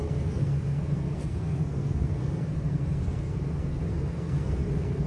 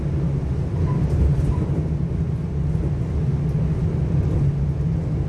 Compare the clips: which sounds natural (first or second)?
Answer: second